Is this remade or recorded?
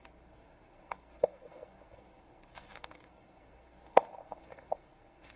remade